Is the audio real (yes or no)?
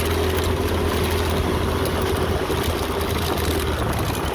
yes